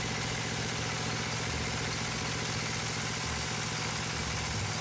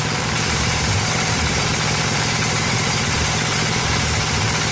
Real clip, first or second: first